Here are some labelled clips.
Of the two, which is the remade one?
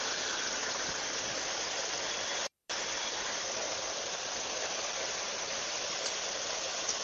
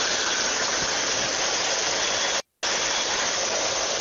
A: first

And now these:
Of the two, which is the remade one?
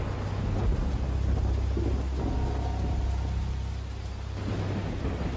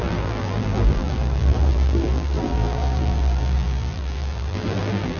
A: second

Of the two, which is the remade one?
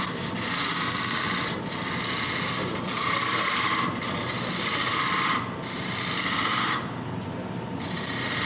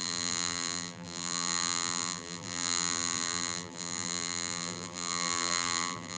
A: second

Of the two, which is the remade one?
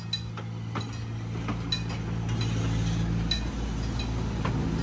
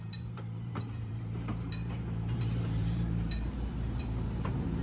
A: second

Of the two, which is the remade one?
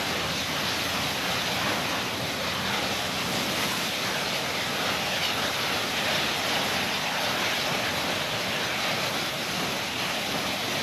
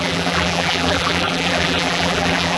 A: second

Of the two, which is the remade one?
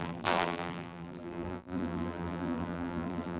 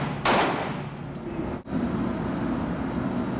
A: first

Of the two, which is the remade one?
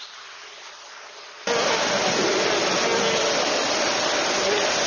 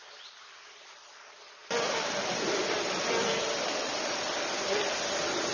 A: second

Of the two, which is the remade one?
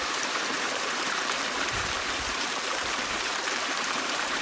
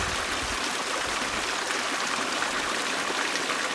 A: first